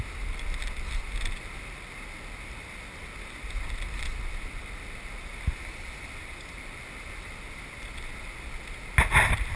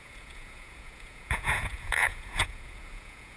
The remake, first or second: second